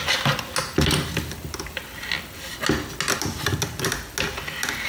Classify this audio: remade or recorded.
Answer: recorded